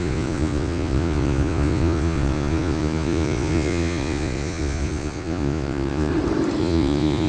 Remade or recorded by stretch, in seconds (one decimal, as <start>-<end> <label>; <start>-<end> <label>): 0.0-6.1 remade; 6.1-6.6 recorded; 6.6-7.3 remade